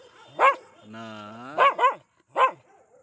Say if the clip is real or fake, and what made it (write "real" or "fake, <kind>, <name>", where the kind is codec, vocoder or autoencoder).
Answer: real